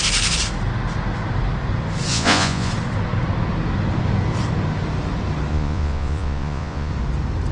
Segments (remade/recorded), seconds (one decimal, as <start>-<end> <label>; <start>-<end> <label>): 0.0-2.1 recorded; 2.1-2.7 remade; 2.7-5.5 recorded; 5.5-6.9 remade; 6.9-7.5 recorded